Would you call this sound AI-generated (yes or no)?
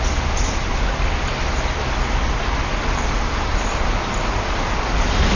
no